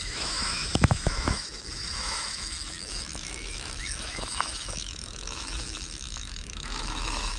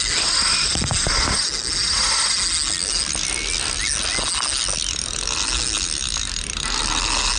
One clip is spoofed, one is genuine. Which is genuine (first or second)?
second